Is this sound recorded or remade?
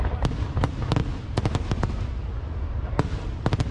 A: recorded